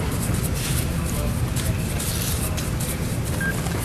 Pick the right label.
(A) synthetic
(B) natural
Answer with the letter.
B